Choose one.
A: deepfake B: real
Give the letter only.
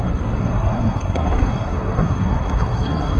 A